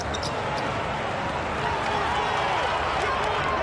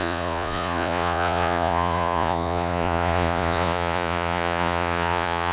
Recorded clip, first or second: first